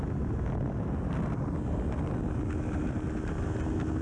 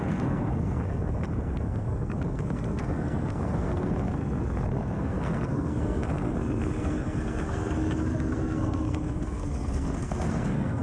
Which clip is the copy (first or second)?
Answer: second